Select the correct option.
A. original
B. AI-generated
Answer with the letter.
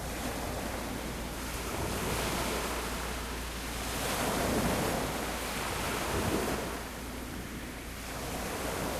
A